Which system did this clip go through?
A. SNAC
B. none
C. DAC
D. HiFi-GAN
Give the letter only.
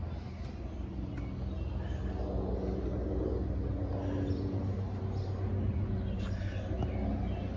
B